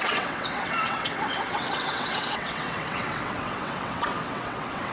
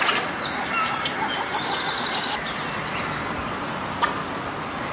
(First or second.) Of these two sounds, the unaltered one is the second